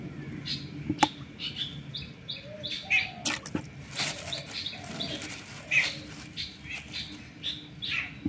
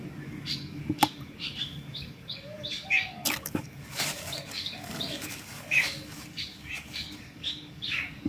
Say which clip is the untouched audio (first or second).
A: first